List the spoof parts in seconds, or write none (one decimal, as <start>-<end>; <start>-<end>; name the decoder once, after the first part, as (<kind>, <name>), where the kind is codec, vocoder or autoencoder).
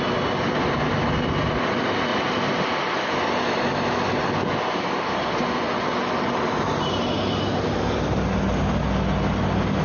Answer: 2.1-3.9 (vocoder, BigVGAN v2)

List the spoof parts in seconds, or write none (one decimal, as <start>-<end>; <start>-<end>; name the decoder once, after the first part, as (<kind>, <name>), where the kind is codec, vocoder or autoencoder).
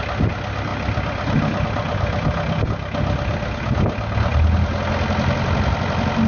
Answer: none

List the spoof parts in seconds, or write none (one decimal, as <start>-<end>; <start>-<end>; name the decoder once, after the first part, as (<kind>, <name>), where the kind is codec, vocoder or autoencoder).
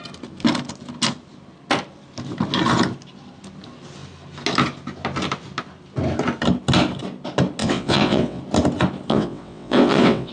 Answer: 7.6-8.4 (vocoder, WaveNeXt); 9.1-10.3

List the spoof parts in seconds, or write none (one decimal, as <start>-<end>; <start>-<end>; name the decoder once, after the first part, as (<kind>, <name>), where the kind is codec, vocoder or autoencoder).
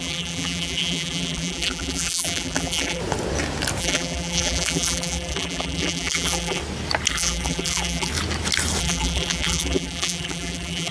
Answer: 0.0-3.0 (vocoder, BigVGAN v2); 3.8-6.6; 7.1-8.1; 8.8-10.9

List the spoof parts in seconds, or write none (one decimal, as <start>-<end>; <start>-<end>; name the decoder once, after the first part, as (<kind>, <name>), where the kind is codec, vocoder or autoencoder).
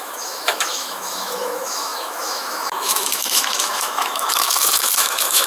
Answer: 0.0-5.5 (autoencoder, DAC-VAE)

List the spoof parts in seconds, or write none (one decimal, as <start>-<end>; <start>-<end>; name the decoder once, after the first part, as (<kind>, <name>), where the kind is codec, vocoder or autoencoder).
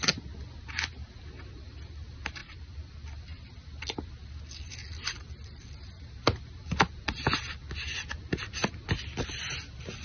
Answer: 2.4-2.9 (vocoder, BigVGAN v2)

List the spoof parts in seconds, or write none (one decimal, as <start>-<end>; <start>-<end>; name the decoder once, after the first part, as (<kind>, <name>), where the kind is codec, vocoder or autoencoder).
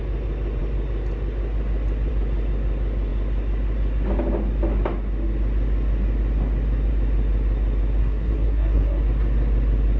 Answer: 8.0-9.0 (codec, SNAC)